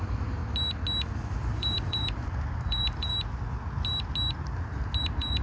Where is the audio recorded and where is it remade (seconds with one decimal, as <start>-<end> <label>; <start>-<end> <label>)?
0.0-0.4 remade; 0.4-1.3 recorded; 1.3-3.1 remade; 3.1-5.0 recorded; 5.0-5.4 remade

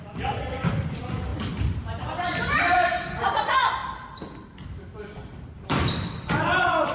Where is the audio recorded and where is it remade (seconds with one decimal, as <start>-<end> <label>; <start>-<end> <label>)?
0.0-3.8 remade; 3.8-4.4 recorded; 4.4-6.9 remade

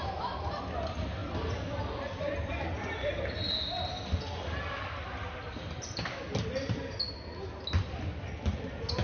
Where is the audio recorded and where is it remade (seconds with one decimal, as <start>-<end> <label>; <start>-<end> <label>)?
0.0-9.0 recorded

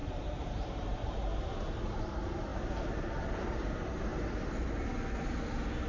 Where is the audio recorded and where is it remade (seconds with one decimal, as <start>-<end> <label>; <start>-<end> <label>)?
0.0-1.4 remade; 1.4-5.9 recorded